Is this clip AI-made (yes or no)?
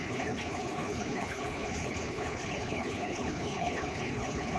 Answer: yes